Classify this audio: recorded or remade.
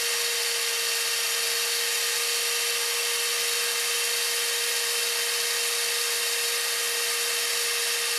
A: recorded